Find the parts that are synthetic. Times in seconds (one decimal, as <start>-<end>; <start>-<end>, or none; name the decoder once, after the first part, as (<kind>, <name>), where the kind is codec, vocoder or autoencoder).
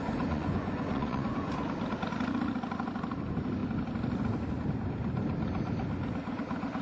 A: 0.0-1.5 (vocoder, Vocos)